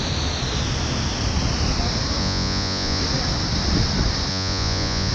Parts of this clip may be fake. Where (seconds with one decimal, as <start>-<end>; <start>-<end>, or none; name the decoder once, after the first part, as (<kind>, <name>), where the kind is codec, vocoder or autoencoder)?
2.2-3.0 (vocoder, Vocos); 4.3-5.1